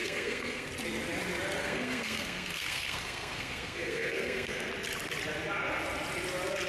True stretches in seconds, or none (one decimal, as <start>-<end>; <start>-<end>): 0.7-1.6; 4.7-6.7